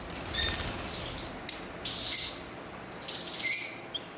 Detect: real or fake real